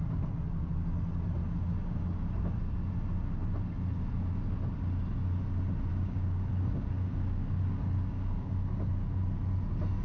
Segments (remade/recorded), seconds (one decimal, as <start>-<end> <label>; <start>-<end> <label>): 0.0-5.9 recorded; 5.9-8.5 remade; 8.5-10.0 recorded